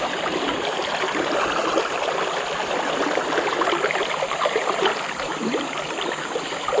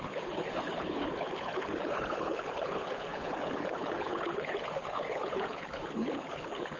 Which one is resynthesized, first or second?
second